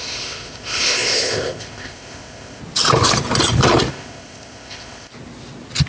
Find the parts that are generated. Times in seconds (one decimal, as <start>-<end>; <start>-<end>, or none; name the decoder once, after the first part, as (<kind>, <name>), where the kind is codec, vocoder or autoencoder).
0.0-2.6 (codec, ZipCodec); 3.9-5.1

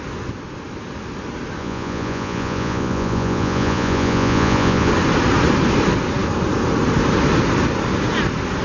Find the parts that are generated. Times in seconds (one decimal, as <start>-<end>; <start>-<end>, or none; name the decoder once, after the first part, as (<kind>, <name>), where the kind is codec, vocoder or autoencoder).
1.6-4.9 (vocoder, Vocos)

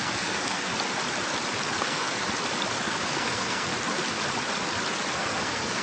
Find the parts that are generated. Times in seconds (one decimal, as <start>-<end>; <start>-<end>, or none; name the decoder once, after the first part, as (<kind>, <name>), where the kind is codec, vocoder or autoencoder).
0.0-0.7 (codec, SNAC); 1.8-2.2; 2.8-3.7; 5.1-5.8